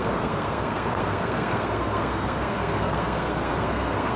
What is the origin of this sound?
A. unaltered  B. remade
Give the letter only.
B